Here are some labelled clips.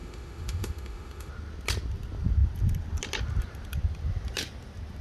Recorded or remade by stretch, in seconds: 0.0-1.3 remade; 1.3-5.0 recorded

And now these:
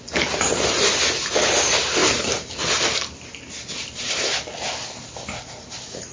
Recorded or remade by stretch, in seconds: 0.0-6.1 recorded

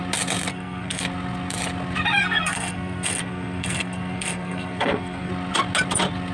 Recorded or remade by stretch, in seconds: 0.0-0.5 recorded; 0.5-1.0 remade; 1.0-2.2 recorded; 2.2-5.3 remade; 5.3-6.3 recorded

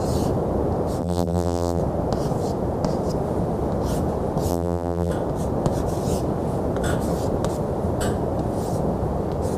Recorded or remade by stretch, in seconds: 0.0-1.0 recorded; 1.0-1.8 remade; 1.8-4.5 recorded; 4.5-5.1 remade; 5.1-9.6 recorded

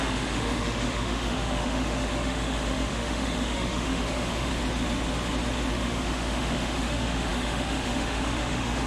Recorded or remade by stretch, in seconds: 0.0-4.5 remade; 4.5-5.7 recorded; 5.7-8.9 remade